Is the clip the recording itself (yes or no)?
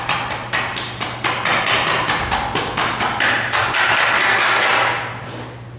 yes